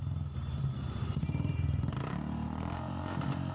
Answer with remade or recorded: remade